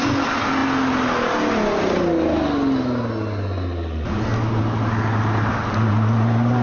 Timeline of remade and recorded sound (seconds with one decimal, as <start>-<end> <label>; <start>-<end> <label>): 0.0-6.6 recorded